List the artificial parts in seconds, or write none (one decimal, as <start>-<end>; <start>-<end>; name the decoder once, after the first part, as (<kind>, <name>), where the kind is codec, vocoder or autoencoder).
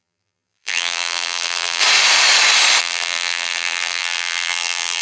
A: 0.0-1.8 (vocoder, BigVGAN v2); 2.8-5.0